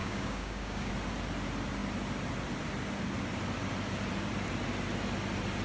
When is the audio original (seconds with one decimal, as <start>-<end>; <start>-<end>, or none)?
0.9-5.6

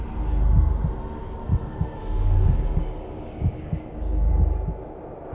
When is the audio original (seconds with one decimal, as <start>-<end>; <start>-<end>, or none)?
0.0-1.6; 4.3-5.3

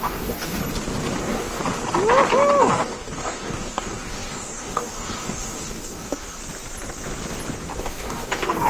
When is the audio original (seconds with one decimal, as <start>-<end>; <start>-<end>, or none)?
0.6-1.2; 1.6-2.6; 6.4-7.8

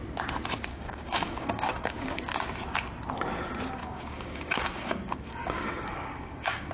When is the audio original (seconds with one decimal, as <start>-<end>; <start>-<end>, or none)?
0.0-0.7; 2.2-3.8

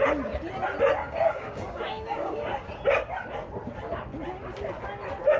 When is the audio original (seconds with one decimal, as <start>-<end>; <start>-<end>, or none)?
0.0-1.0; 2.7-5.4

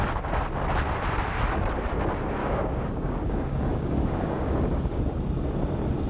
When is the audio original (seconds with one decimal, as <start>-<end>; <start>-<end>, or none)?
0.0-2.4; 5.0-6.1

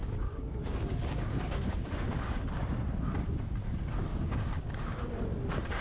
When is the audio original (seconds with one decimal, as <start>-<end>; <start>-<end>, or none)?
2.1-4.1; 5.0-5.8

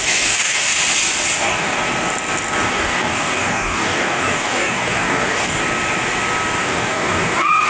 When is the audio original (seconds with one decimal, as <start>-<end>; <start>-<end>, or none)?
0.7-1.4; 1.8-2.7; 5.6-6.6